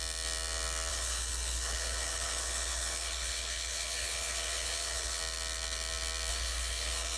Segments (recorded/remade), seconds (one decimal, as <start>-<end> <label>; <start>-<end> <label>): 0.0-0.9 recorded; 0.9-5.2 remade; 5.2-6.3 recorded; 6.3-7.2 remade